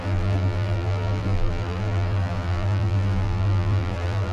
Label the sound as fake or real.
fake